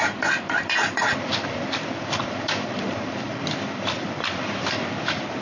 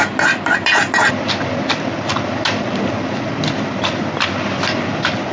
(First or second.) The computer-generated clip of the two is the first